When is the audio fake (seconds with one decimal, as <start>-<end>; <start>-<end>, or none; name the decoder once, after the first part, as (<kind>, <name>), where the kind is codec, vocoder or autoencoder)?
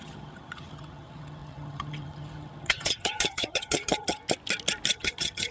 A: 0.0-4.2 (vocoder, HiFi-GAN); 4.9-5.5